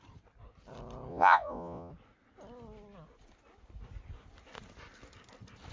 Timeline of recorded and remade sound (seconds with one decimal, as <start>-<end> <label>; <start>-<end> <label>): 0.0-1.1 recorded; 1.1-1.9 remade; 1.9-5.7 recorded